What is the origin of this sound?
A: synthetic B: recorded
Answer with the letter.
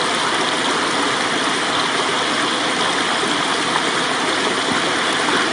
B